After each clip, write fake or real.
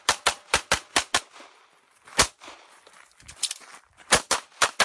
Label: real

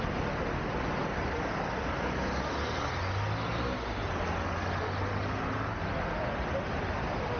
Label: real